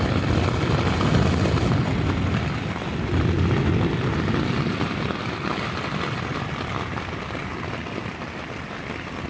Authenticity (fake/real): real